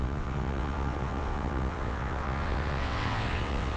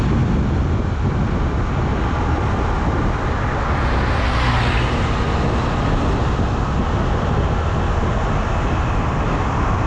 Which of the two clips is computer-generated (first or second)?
first